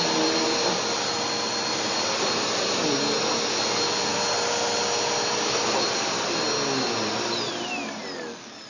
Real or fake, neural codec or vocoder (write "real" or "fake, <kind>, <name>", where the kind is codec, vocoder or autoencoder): real